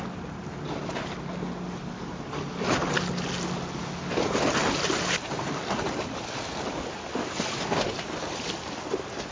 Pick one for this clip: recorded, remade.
recorded